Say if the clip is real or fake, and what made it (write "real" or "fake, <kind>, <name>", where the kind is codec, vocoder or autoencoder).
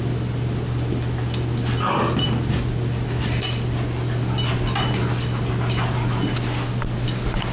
real